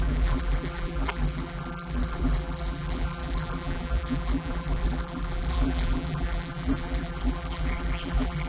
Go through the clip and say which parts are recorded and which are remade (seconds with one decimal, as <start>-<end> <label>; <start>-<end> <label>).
0.0-8.5 remade